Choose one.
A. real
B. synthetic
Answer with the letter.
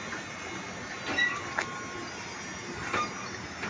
A